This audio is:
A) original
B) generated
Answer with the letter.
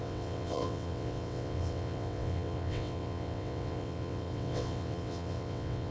B